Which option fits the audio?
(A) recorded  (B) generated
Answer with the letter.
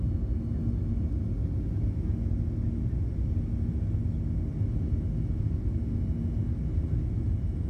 A